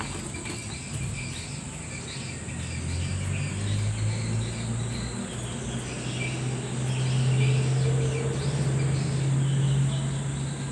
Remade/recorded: recorded